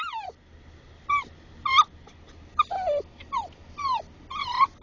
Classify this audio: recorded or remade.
recorded